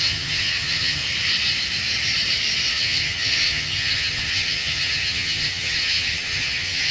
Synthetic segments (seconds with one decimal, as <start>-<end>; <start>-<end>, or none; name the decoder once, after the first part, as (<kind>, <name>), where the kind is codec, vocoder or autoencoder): 0.0-1.0 (vocoder, HiFi-GAN); 2.7-6.9